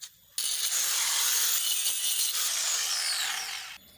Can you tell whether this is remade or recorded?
recorded